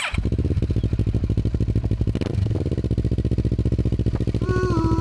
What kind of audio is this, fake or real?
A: real